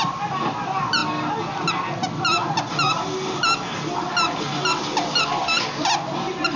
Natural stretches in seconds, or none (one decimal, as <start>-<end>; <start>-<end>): 0.0-6.6